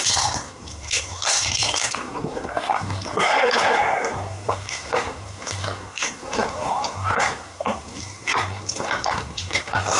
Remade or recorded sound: remade